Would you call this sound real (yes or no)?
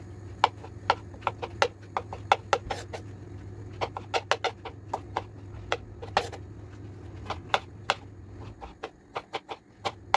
yes